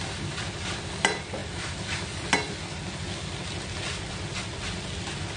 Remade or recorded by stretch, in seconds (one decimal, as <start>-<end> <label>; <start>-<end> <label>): 0.0-5.4 recorded